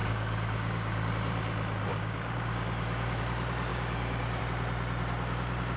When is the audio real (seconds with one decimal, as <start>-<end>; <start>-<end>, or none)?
1.1-1.9; 3.2-3.7; 4.4-5.8